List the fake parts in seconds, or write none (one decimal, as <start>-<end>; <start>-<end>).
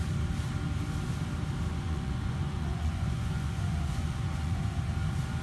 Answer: 1.7-4.9